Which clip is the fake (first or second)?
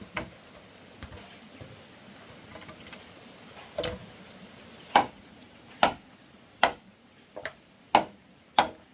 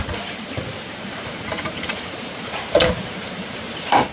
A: second